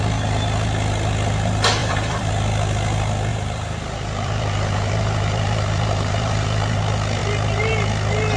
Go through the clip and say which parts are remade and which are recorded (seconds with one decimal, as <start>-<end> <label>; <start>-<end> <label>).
0.0-1.8 recorded; 1.8-2.3 remade; 2.3-3.3 recorded; 3.3-6.8 remade; 6.8-8.4 recorded